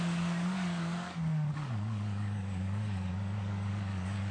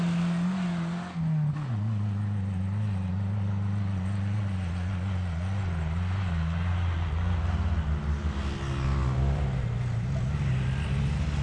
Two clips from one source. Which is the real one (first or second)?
second